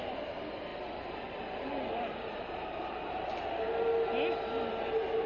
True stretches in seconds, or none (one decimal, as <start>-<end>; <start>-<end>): 0.0-0.7; 3.4-5.3